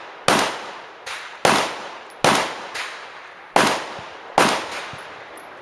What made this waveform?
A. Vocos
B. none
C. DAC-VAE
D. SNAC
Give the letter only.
B